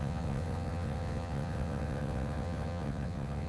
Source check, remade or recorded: remade